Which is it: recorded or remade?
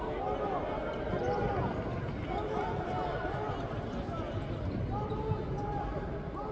recorded